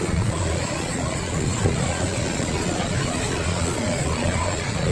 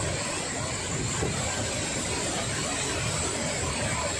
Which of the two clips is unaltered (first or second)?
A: second